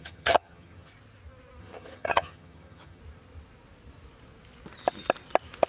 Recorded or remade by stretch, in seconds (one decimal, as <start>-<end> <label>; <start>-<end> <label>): 0.0-0.9 remade; 0.9-1.6 recorded; 1.6-3.0 remade; 3.0-5.7 recorded